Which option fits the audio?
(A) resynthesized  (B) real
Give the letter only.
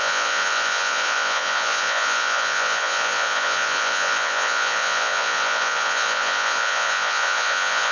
A